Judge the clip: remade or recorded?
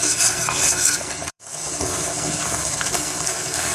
remade